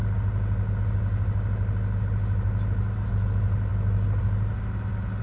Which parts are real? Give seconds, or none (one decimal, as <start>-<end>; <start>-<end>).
0.0-5.2